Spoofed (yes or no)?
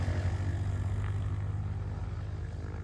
no